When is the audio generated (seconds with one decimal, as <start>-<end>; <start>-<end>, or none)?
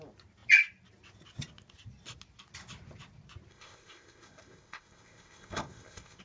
3.5-6.2